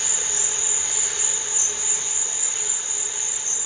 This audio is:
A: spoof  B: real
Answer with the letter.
B